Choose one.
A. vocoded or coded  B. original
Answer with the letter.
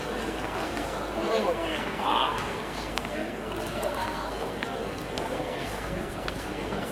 A